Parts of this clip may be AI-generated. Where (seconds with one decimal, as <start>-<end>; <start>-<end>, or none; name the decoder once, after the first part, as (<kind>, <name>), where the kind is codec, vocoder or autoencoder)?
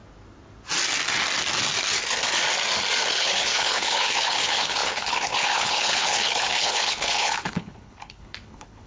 3.2-8.9 (codec, HILCodec)